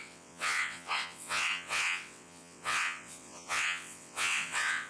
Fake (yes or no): yes